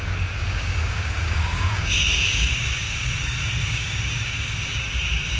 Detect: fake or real fake